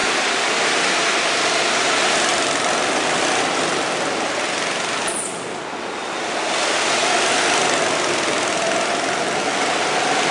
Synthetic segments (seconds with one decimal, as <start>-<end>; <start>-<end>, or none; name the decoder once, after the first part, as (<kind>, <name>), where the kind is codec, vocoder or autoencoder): 2.3-5.1 (vocoder, BigVGAN v2)